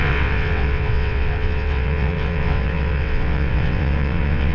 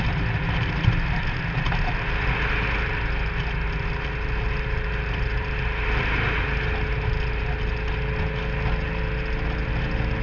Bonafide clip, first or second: second